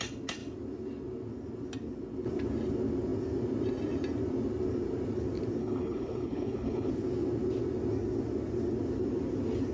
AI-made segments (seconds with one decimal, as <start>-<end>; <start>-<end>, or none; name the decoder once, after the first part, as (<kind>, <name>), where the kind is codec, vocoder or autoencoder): 5.6-6.9 (codec, HILCodec)